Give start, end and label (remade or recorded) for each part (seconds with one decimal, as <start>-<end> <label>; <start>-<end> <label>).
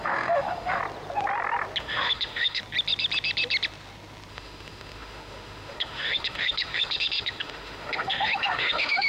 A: 0.0-0.8 remade; 0.8-1.8 recorded; 1.8-2.6 remade; 2.6-4.3 recorded; 4.3-9.1 remade